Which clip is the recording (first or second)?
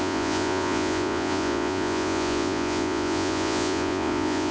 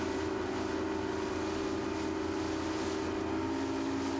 second